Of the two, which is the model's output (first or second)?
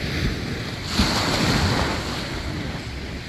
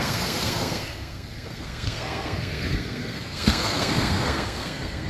second